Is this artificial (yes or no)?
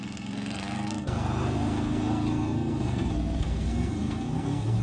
yes